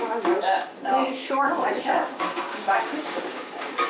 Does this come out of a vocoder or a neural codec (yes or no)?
yes